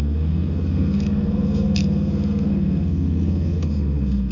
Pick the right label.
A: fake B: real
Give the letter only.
A